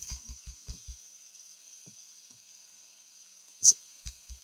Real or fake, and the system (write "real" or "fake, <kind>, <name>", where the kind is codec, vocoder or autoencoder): fake, codec, SNAC